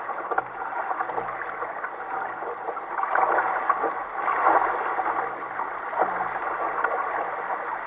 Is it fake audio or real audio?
real